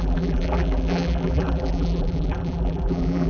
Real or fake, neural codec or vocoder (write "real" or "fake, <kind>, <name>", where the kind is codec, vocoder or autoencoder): fake, vocoder, BigVGAN v2